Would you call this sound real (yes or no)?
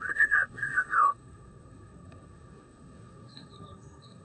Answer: no